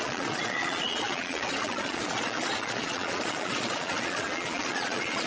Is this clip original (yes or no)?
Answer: no